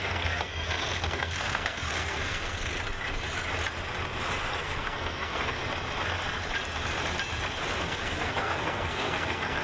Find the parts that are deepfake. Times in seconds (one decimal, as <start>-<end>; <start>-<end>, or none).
0.0-2.7; 4.6-5.6; 7.8-9.6